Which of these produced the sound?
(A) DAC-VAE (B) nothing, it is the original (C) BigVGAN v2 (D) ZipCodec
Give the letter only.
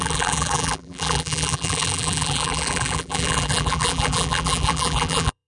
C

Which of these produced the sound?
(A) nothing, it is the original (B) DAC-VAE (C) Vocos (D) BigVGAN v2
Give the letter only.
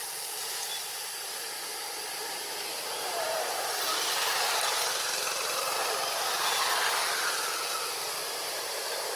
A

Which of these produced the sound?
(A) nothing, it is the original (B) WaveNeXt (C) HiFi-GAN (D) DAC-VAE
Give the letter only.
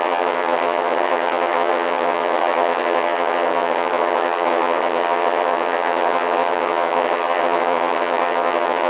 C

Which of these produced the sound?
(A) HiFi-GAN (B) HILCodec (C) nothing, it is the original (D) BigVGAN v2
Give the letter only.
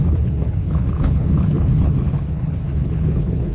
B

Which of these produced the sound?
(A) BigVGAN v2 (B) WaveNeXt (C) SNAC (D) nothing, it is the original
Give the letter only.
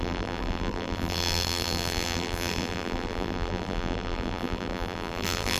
A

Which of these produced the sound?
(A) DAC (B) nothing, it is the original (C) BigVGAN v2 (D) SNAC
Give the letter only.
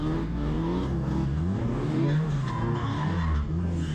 A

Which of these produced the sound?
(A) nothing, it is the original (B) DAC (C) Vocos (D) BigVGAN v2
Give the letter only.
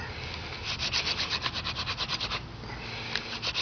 A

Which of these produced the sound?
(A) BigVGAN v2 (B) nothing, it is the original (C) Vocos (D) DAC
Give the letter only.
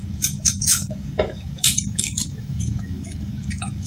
D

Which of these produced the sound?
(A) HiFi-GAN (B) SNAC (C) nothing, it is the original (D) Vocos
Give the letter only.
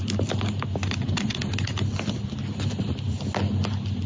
C